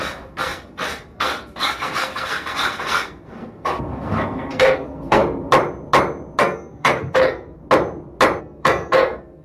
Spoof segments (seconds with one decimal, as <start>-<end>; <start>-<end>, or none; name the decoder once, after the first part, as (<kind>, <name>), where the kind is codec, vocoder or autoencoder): 0.0-5.2 (codec, SNAC); 6.4-7.6; 8.4-9.4